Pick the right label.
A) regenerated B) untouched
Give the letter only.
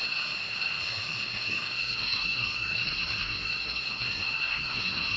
A